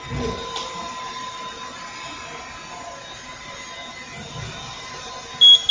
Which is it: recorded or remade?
recorded